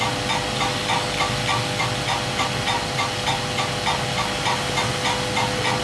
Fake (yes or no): no